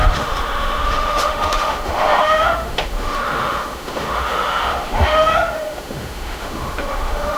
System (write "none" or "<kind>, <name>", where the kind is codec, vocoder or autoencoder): autoencoder, DAC-VAE